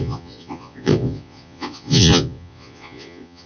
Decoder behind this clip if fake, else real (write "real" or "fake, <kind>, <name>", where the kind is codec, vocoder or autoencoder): fake, vocoder, Vocos